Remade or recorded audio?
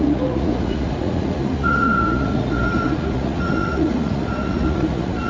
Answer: remade